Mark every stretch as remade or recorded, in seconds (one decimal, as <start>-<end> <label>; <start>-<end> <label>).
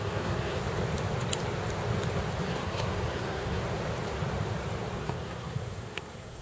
0.0-0.6 remade; 0.6-2.5 recorded; 2.5-3.6 remade; 3.6-5.0 recorded; 5.0-6.4 remade